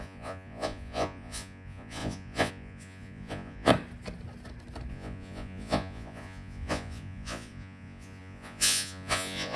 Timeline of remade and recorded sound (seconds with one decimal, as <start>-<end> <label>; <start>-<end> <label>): 0.0-3.7 remade; 3.7-4.9 recorded; 4.9-9.6 remade